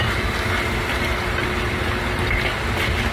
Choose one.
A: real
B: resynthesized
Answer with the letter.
A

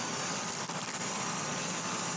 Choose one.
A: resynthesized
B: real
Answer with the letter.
A